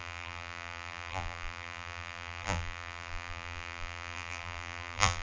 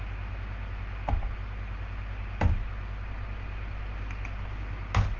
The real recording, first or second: second